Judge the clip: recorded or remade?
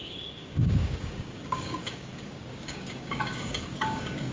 remade